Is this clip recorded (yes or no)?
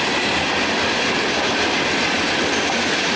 yes